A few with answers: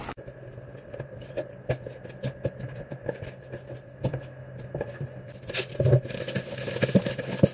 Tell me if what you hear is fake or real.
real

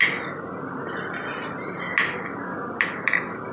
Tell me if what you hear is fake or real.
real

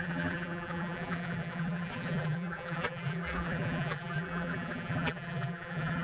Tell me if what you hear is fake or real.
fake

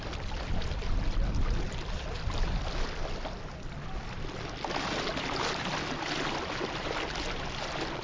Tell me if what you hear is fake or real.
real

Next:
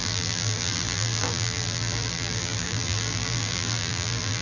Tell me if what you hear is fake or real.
fake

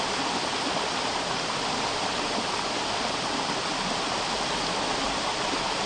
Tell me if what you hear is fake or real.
real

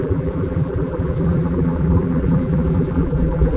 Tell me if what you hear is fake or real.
fake